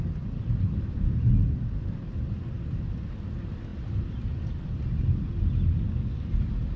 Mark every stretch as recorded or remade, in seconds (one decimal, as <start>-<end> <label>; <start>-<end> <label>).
0.0-6.8 recorded